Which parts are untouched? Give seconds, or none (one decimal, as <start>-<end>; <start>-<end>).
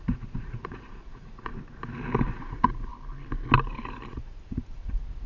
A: 1.5-2.3; 2.9-4.1